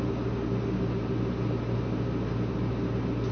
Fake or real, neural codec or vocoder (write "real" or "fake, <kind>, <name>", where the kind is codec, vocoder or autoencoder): real